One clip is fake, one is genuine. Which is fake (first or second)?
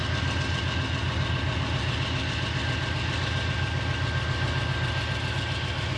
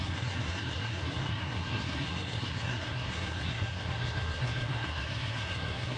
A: second